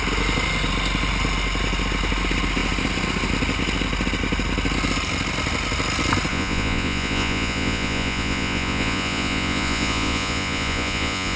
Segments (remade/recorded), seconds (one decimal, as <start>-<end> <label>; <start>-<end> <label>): 0.0-6.3 recorded; 6.3-11.4 remade